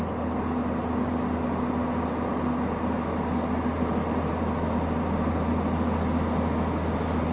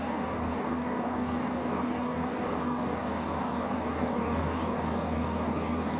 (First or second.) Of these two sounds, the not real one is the second